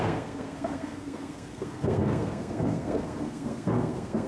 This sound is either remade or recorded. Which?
remade